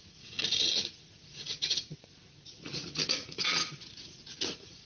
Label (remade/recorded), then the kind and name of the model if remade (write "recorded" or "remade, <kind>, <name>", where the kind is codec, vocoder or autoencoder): remade, vocoder, Vocos